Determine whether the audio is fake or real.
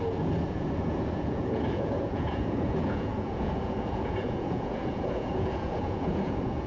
fake